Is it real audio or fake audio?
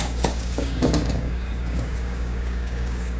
fake